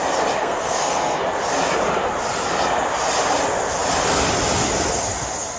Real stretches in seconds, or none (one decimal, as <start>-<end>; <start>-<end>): 0.0-0.4; 1.2-5.6